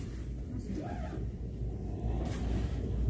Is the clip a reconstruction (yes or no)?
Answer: yes